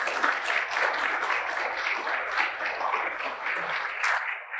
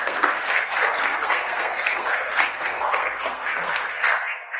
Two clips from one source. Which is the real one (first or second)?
first